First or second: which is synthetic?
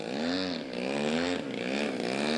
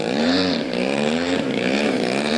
second